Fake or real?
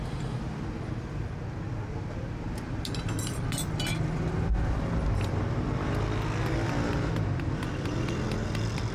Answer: real